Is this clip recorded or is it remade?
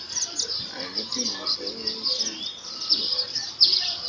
recorded